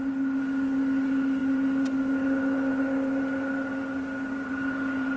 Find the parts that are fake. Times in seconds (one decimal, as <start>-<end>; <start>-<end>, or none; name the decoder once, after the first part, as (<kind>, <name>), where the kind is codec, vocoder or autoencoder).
none